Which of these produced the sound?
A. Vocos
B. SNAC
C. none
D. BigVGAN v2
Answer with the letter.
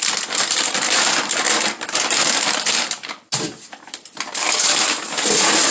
D